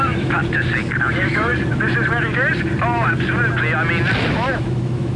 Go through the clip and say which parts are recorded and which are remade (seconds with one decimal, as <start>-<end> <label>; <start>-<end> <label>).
0.0-0.4 remade; 0.4-1.1 recorded; 1.1-1.5 remade; 1.5-4.6 recorded; 4.6-5.2 remade